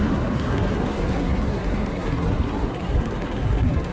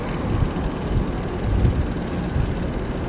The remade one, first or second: first